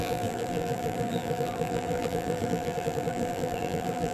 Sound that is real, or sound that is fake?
fake